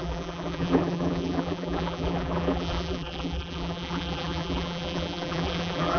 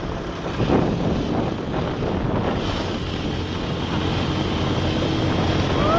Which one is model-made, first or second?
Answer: first